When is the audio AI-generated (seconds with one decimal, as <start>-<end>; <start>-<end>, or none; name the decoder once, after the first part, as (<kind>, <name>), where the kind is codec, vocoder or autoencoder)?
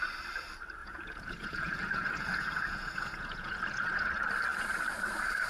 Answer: 0.8-4.1 (vocoder, Vocos)